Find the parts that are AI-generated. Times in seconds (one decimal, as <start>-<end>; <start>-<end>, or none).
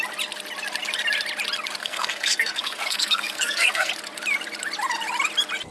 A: 1.8-3.9